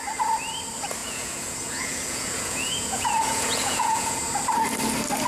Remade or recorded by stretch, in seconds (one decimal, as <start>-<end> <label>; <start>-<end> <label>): 0.0-1.0 recorded; 1.0-4.2 remade; 4.2-5.3 recorded